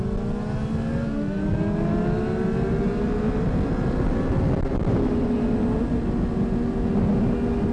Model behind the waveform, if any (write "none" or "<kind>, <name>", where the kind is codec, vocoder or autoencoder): none